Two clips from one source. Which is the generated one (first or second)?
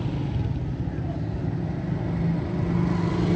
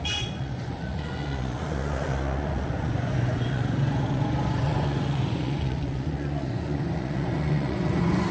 second